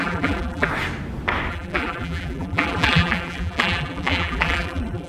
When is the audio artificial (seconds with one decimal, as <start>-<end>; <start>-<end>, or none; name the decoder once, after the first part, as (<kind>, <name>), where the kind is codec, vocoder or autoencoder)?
0.0-0.7 (vocoder, BigVGAN v2); 1.5-5.1

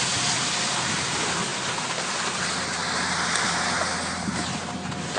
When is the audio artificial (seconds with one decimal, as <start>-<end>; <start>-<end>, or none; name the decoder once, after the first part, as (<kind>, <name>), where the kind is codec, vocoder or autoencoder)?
none

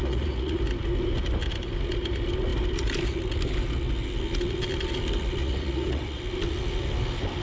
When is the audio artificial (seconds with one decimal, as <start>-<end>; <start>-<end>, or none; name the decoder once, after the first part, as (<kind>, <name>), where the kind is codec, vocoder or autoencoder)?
0.0-0.6 (vocoder, Vocos); 5.4-6.2

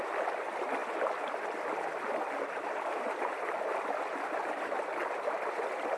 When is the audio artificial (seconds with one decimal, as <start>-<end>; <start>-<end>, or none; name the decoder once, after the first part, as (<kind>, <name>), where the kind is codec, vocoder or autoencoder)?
none

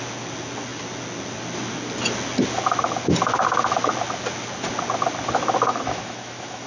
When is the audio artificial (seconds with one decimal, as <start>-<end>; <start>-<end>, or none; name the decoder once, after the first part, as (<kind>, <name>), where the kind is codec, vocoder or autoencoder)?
5.7-6.7 (autoencoder, DAC-VAE)